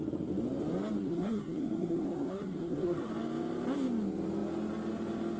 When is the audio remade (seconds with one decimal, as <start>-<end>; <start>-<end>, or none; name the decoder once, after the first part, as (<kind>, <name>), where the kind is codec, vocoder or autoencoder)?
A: 1.0-3.1 (codec, SNAC)